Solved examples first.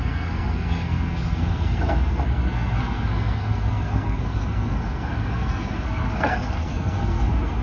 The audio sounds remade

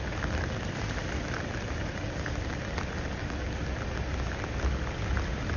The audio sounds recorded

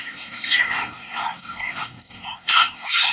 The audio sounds remade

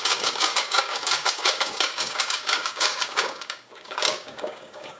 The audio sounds remade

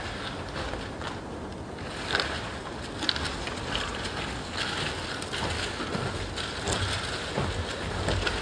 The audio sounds recorded